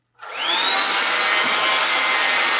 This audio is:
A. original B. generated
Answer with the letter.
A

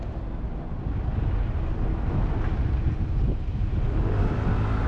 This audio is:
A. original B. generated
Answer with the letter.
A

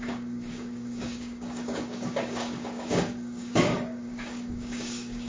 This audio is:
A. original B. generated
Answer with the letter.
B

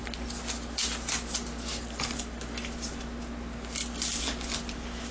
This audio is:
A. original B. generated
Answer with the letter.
A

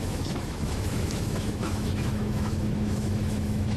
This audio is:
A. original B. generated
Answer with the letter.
B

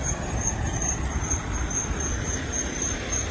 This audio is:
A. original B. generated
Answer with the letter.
A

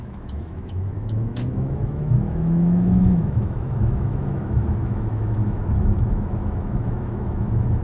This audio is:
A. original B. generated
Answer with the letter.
B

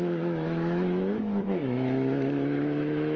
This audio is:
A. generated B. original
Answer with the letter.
A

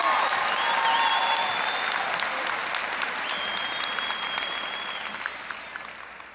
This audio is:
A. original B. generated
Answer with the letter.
A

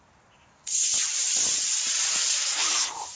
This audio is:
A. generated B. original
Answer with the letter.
B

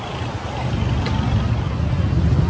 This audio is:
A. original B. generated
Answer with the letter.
A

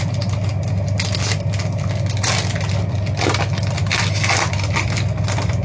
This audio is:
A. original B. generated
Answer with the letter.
A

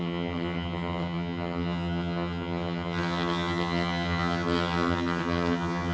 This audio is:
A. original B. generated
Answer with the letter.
B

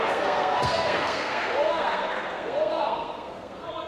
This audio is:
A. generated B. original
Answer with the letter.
A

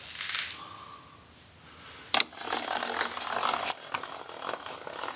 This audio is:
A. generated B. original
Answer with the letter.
B